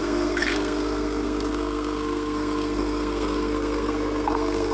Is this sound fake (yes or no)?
yes